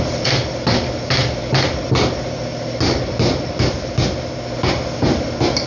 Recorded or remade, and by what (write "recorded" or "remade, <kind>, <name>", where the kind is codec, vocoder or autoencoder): recorded